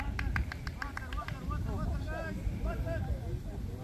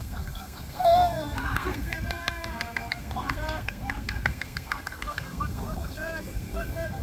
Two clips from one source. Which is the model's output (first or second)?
second